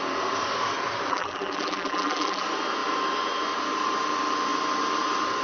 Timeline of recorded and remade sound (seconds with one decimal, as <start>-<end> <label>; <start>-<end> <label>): 0.0-1.1 recorded; 1.1-2.4 remade; 2.4-5.4 recorded